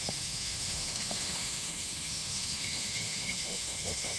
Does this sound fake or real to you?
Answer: fake